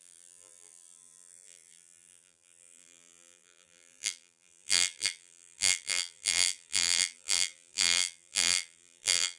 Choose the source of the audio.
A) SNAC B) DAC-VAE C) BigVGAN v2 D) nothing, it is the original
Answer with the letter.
C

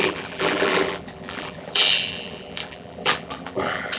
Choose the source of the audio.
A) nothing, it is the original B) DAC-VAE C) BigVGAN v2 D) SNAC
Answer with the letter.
C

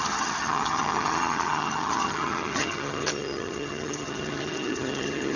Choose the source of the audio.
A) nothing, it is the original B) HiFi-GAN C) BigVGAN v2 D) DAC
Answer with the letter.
B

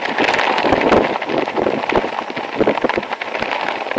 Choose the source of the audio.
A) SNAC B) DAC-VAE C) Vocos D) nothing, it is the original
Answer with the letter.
D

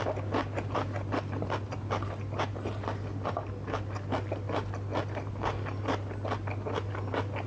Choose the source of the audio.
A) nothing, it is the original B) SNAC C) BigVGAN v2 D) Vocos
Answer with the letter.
A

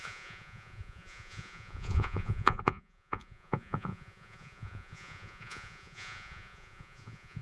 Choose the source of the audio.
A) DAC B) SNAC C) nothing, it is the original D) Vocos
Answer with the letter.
D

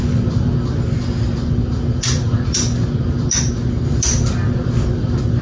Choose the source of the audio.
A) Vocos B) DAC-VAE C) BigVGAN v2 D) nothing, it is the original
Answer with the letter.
D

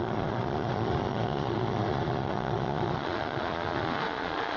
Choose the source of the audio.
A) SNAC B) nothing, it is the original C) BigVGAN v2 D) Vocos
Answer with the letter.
D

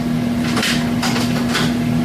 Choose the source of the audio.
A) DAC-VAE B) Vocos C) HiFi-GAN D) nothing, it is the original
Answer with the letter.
D